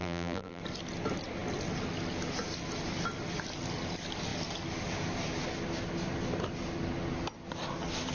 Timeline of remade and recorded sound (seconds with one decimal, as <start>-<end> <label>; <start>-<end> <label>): 0.0-0.6 remade; 0.6-8.1 recorded